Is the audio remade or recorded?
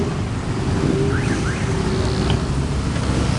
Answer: recorded